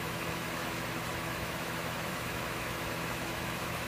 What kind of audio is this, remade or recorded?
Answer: remade